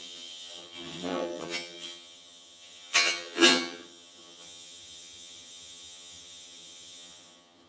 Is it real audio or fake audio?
fake